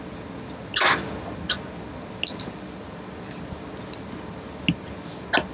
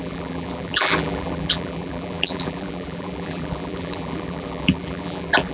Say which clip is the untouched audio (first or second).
first